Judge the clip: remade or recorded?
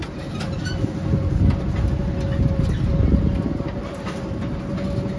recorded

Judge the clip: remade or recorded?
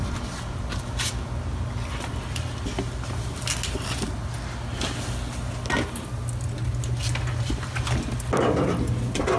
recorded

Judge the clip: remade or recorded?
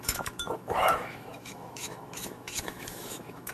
remade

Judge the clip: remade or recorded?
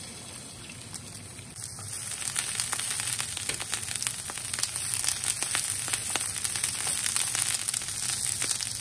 recorded